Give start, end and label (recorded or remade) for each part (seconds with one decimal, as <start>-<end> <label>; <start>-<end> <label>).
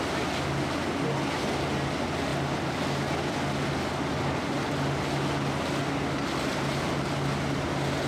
0.0-8.1 recorded